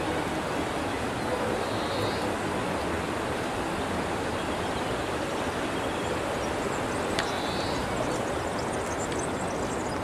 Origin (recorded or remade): recorded